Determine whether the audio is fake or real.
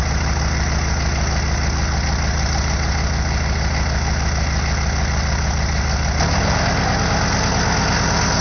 real